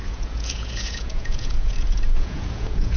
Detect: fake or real fake